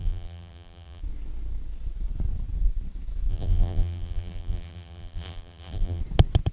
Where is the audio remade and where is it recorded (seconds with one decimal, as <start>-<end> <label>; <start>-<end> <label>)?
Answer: 0.0-1.0 remade; 1.0-3.3 recorded; 3.3-6.0 remade; 6.0-6.5 recorded